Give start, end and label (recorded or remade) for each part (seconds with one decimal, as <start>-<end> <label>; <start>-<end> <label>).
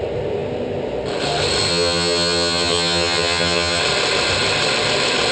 0.0-1.7 recorded; 1.7-3.8 remade; 3.8-5.3 recorded